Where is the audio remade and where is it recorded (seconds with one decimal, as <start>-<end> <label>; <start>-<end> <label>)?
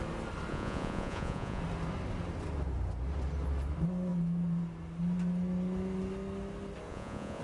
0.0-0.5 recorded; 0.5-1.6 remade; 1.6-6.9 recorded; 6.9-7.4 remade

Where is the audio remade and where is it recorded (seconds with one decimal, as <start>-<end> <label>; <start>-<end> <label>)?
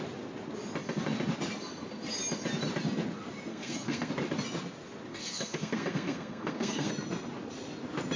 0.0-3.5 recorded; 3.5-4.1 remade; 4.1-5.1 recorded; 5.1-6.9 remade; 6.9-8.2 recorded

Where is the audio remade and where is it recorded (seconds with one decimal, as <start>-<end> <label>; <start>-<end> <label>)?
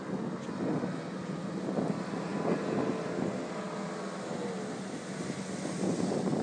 0.0-6.4 recorded